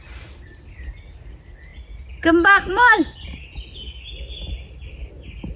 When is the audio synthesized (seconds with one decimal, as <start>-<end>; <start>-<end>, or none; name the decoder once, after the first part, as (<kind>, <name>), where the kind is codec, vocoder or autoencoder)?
none